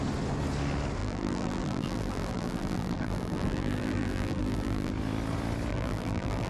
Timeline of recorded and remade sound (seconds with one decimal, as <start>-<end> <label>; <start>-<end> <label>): 0.0-1.0 recorded; 1.0-4.9 remade; 4.9-5.7 recorded; 5.7-6.5 remade